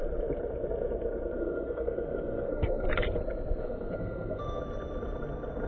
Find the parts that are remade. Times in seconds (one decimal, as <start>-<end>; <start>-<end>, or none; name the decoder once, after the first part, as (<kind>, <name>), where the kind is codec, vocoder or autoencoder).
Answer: 1.4-2.9 (codec, SNAC); 3.6-4.6